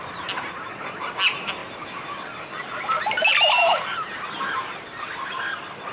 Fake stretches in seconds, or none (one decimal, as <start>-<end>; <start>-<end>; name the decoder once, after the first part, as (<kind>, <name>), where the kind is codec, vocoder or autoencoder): none